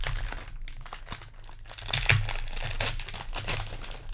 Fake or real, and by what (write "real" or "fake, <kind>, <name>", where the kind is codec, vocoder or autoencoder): real